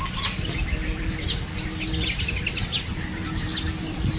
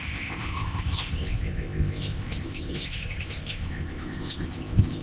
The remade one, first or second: second